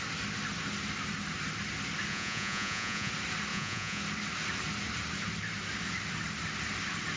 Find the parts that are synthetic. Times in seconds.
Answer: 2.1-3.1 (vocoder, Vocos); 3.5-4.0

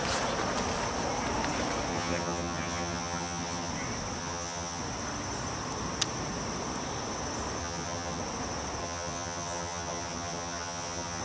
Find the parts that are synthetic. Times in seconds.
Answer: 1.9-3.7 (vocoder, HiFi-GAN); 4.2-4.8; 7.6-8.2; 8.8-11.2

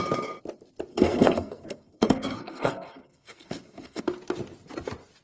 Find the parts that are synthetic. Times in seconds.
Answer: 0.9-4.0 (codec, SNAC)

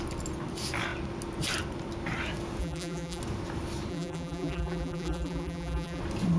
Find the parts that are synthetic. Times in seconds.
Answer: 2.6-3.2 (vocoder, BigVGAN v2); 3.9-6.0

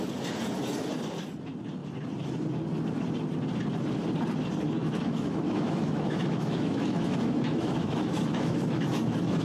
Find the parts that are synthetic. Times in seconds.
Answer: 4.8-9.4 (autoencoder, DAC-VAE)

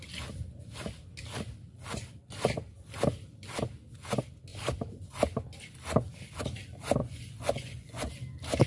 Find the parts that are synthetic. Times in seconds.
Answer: 7.0-8.1 (vocoder, Vocos)

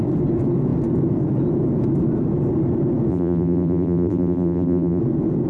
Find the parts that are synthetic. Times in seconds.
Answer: 3.1-5.0 (vocoder, BigVGAN v2)